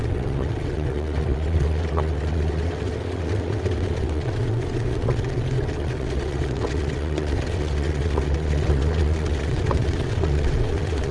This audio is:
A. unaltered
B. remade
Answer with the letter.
B